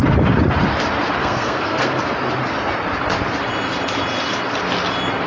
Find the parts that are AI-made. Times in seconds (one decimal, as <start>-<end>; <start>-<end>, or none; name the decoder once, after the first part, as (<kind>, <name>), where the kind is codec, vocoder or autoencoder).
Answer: 1.2-2.1 (codec, SNAC)